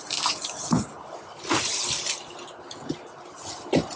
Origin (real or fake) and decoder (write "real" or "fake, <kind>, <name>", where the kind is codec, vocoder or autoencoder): real